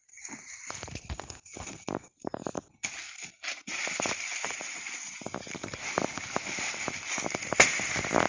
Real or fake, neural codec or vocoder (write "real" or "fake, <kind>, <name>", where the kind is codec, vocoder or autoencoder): fake, vocoder, BigVGAN v2